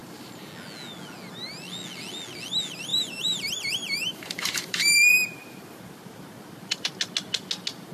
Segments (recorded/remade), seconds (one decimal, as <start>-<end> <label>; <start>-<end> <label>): 0.0-0.5 remade; 0.5-2.9 recorded; 2.9-5.8 remade; 5.8-7.9 recorded

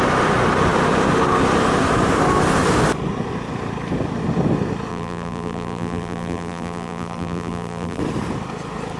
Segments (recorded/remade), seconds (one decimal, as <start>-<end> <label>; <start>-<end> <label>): 0.0-4.9 recorded; 4.9-8.0 remade; 8.0-9.0 recorded

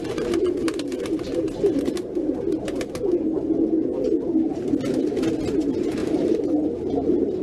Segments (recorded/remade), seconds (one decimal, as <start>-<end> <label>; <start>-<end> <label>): 0.0-6.0 recorded; 6.0-6.6 remade; 6.6-7.4 recorded

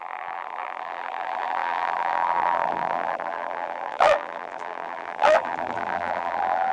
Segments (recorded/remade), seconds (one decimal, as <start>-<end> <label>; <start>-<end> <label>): 0.0-6.7 remade

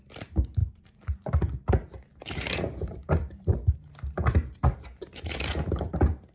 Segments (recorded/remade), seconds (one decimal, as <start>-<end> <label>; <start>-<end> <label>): 0.0-0.6 recorded; 0.6-1.3 remade; 1.3-2.1 recorded; 2.1-6.3 remade

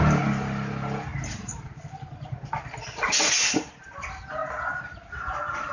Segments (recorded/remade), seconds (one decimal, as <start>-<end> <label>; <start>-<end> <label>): 0.0-1.1 recorded; 1.1-2.2 remade; 2.2-5.7 recorded

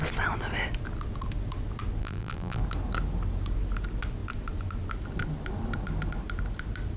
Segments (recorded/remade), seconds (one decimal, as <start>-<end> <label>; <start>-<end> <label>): 0.0-2.0 recorded; 2.0-2.6 remade; 2.6-7.0 recorded

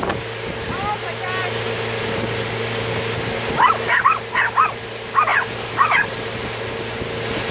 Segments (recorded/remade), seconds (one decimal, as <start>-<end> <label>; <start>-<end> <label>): 0.0-7.5 recorded